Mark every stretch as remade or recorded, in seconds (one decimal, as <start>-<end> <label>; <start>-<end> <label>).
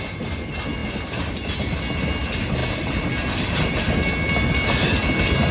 0.0-5.5 recorded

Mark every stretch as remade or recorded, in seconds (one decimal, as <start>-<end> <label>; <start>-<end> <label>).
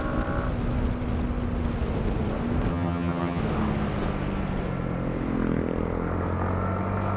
0.0-2.7 recorded; 2.7-3.4 remade; 3.4-7.2 recorded